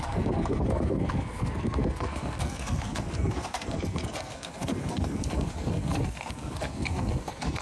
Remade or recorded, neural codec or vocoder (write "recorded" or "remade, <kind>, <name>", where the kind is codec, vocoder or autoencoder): remade, codec, SNAC